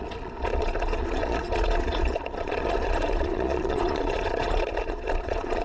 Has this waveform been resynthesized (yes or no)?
yes